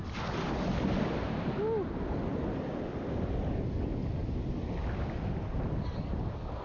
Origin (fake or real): real